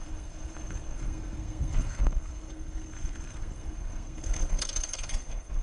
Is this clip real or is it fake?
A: fake